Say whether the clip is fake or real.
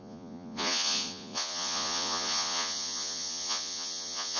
fake